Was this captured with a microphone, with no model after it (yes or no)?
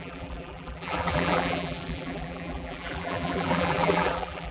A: no